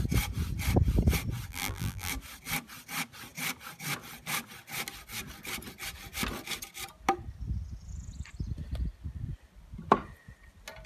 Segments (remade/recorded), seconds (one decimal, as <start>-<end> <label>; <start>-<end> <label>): 0.0-1.5 recorded; 1.5-2.1 remade; 2.1-10.9 recorded